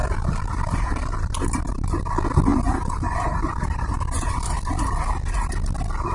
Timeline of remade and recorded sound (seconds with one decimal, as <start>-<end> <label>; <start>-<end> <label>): 0.0-2.1 remade; 2.1-2.5 recorded; 2.5-4.6 remade; 4.6-6.1 recorded